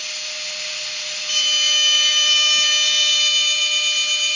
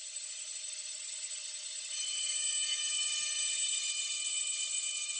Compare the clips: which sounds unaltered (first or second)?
first